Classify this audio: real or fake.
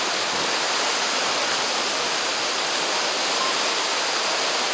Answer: real